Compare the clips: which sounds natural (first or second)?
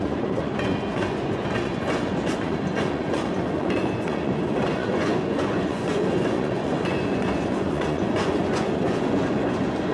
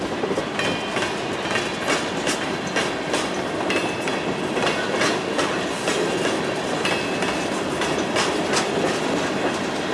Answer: second